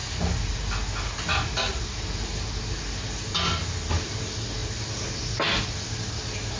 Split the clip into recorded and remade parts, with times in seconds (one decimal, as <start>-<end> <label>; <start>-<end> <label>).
0.0-6.6 recorded